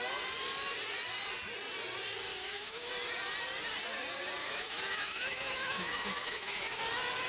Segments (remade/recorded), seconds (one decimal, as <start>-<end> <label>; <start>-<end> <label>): 0.0-2.3 recorded; 2.3-2.9 remade; 2.9-4.4 recorded; 4.4-6.8 remade; 6.8-7.3 recorded